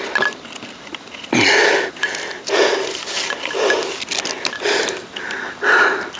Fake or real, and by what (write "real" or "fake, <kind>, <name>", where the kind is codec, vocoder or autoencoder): real